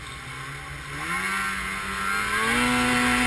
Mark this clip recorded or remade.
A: recorded